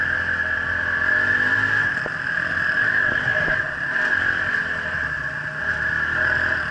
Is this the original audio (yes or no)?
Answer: yes